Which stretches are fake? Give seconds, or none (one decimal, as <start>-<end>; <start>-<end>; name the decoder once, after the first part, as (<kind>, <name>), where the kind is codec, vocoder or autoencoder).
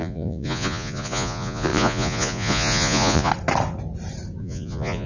0.0-3.3 (vocoder, Vocos); 4.4-5.1